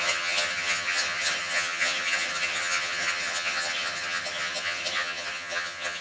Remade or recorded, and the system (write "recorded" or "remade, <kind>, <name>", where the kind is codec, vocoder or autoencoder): remade, vocoder, HiFi-GAN